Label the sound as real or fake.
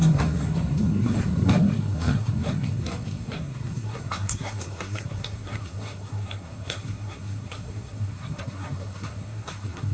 fake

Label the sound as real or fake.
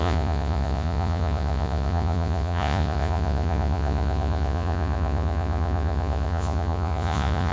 fake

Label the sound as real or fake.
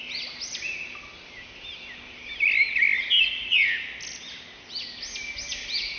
real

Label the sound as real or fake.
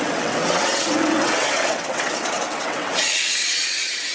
fake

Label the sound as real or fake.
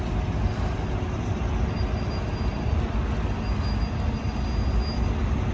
real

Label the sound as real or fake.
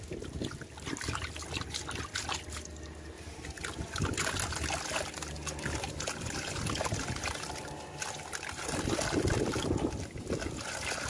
real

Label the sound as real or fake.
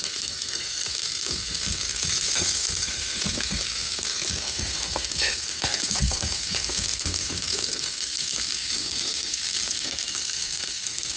fake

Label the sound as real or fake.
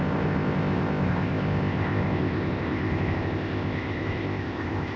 fake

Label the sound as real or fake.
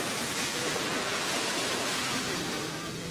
fake